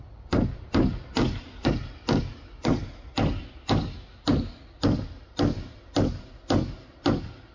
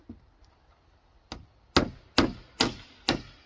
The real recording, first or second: second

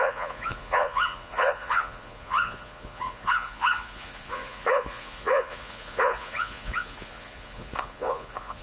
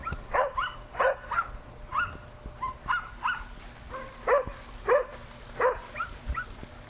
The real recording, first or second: second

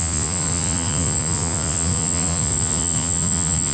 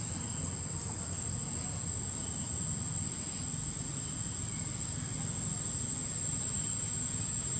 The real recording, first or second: second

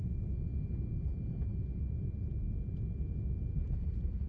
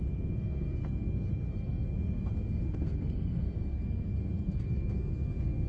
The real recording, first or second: first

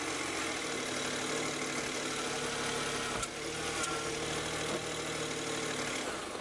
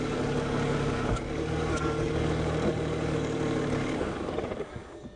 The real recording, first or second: first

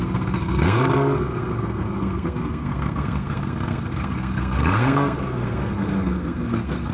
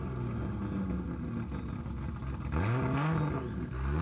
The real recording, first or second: second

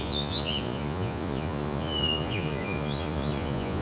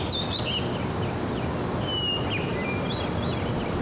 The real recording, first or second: second